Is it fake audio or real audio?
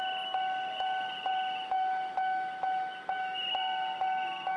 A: real